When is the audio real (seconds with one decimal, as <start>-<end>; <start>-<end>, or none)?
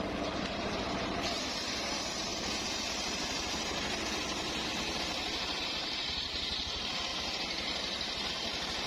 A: 2.3-5.0